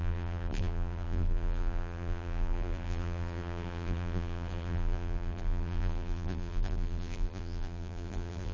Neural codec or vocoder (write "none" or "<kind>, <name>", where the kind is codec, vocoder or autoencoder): vocoder, BigVGAN v2